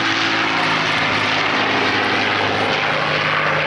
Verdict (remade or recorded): recorded